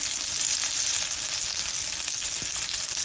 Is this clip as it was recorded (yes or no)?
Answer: yes